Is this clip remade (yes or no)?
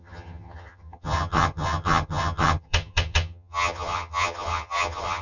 yes